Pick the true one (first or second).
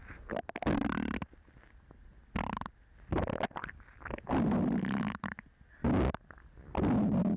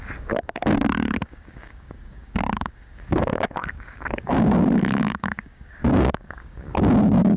first